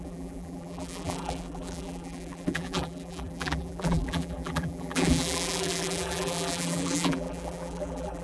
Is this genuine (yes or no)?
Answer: no